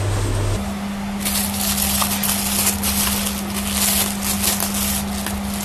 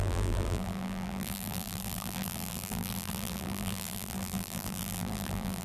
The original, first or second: first